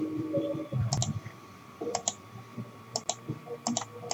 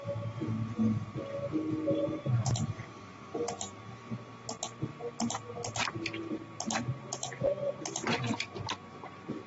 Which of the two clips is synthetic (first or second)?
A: first